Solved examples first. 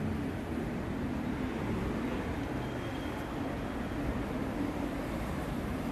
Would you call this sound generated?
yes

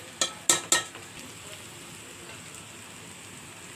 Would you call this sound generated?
no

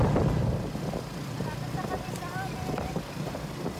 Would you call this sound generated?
no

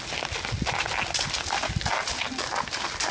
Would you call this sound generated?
no